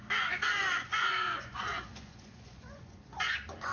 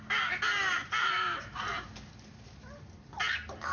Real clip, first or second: second